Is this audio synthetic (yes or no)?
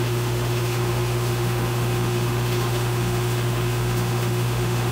yes